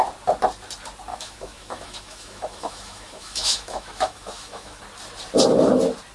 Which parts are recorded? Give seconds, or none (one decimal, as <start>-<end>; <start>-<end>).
0.0-1.1; 4.8-6.1